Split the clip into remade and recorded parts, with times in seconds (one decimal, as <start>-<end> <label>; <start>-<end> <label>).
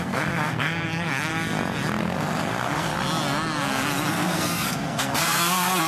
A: 0.0-1.3 remade; 1.3-2.0 recorded; 2.0-2.9 remade; 2.9-4.1 recorded; 4.1-5.9 remade